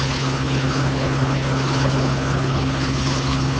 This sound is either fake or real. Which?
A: fake